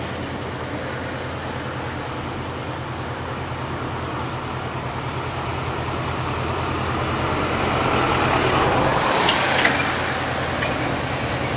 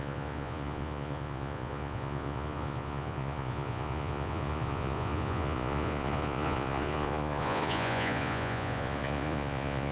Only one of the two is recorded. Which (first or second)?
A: first